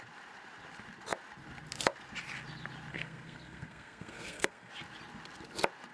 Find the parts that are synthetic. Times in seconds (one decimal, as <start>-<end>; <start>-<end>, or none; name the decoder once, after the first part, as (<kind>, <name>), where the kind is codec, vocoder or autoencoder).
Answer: 2.9-4.7 (codec, SNAC)

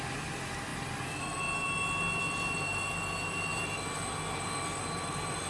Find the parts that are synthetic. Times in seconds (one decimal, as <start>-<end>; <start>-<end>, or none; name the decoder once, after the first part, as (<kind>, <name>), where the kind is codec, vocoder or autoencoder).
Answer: none